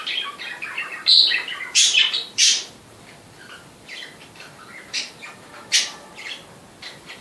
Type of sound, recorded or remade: remade